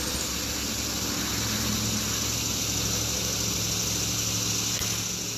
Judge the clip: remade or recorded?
recorded